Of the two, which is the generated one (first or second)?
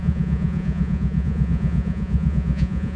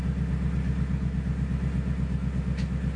first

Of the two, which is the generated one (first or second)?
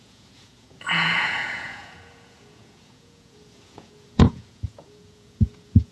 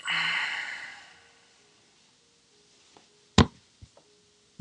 first